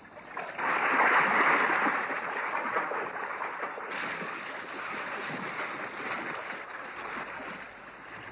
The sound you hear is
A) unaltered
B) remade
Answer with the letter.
A